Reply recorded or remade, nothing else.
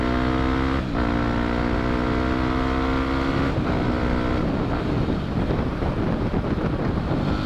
recorded